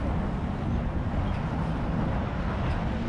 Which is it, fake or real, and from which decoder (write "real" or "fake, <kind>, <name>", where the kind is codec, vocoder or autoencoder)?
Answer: real